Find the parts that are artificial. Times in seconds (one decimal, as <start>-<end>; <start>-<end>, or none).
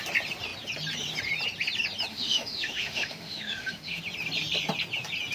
2.1-4.0